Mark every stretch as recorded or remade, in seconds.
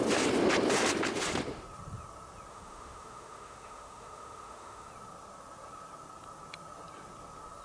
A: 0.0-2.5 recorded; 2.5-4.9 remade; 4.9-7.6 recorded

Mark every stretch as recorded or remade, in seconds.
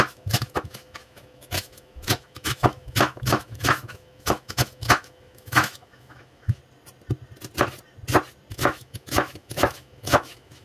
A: 0.0-6.6 remade; 6.6-8.5 recorded; 8.5-10.6 remade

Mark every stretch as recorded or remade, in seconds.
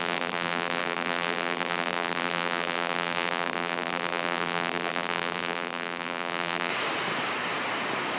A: 0.0-6.7 remade; 6.7-8.2 recorded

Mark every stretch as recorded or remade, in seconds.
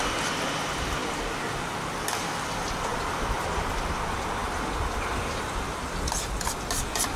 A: 0.0-7.2 recorded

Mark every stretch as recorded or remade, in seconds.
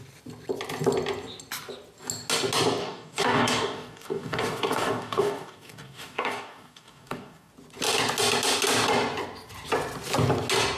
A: 0.0-2.8 recorded; 2.8-7.5 remade; 7.5-10.8 recorded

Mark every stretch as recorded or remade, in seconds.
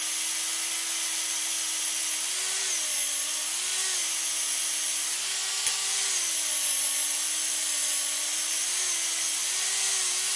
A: 0.0-10.4 recorded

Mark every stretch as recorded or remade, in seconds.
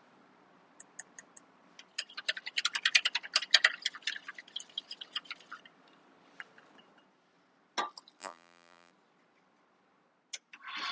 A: 0.0-8.2 recorded; 8.2-8.9 remade; 8.9-10.9 recorded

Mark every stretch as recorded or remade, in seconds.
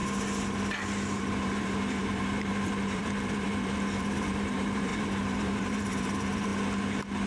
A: 0.0-1.2 recorded; 1.2-6.5 remade; 6.5-7.3 recorded